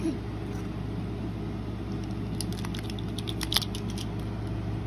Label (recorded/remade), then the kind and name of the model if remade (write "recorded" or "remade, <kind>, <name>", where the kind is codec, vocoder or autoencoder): recorded